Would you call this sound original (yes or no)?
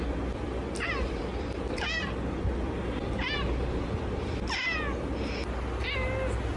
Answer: yes